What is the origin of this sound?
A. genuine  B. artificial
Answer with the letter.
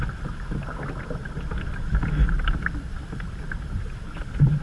A